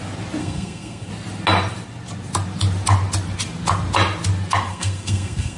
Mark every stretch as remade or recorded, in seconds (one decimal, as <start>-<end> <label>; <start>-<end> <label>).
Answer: 0.0-0.4 recorded; 0.4-1.1 remade; 1.1-4.7 recorded; 4.7-5.6 remade